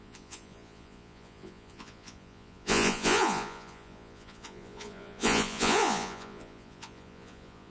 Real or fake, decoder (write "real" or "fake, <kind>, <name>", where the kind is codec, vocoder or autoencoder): fake, vocoder, Vocos